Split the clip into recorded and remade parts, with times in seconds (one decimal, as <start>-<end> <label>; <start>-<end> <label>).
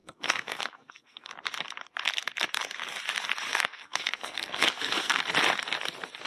0.0-1.3 remade; 1.3-3.5 recorded; 3.5-5.2 remade; 5.2-6.3 recorded